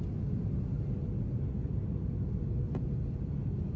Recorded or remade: recorded